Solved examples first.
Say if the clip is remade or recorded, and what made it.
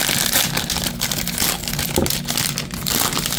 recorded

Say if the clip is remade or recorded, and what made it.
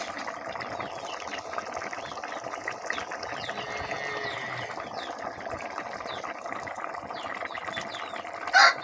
recorded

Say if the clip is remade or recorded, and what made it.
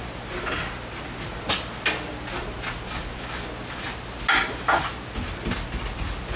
recorded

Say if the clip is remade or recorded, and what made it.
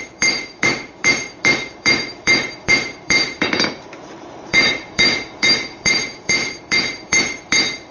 remade, vocoder, BigVGAN v2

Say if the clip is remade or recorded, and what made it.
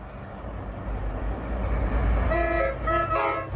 recorded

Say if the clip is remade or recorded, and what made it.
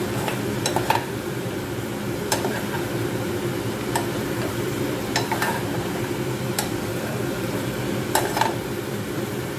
remade, vocoder, BigVGAN v2